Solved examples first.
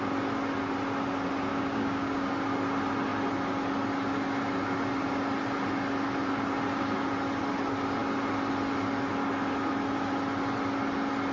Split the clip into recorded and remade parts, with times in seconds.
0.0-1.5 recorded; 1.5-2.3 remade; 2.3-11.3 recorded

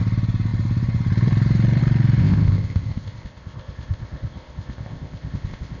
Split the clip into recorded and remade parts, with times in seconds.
0.0-2.2 recorded; 2.2-5.8 remade